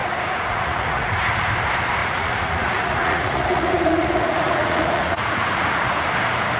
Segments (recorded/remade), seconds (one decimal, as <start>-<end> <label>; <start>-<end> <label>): 0.0-1.5 remade; 1.5-2.0 recorded; 2.0-6.0 remade; 6.0-6.6 recorded

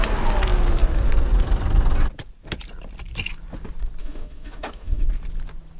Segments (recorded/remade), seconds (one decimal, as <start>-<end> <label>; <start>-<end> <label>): 0.0-4.0 recorded; 4.0-5.1 remade; 5.1-5.8 recorded

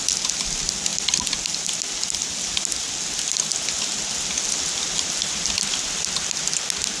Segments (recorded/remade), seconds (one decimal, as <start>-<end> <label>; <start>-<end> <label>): 0.0-7.0 recorded

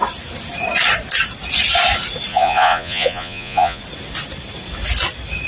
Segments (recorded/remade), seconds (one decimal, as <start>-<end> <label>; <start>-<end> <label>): 0.0-2.3 recorded; 2.3-3.8 remade; 3.8-5.5 recorded

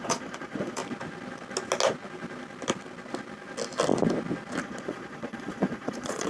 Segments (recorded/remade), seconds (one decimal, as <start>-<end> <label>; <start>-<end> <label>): 0.0-0.8 remade; 0.8-4.6 recorded; 4.6-6.3 remade

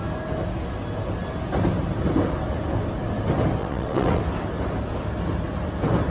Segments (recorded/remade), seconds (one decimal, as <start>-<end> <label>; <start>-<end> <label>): 0.0-3.6 recorded; 3.6-4.2 remade; 4.2-6.1 recorded

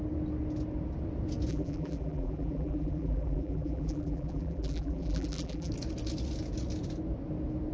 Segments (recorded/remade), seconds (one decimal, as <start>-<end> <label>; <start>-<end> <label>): 0.0-1.5 recorded; 1.5-5.7 remade; 5.7-7.7 recorded

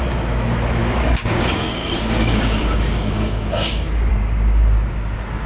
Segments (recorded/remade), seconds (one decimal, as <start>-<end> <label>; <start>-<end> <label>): 0.0-0.8 recorded; 0.8-4.1 remade; 4.1-5.5 recorded